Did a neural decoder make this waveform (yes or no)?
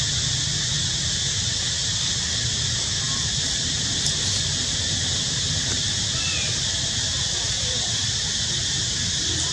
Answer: no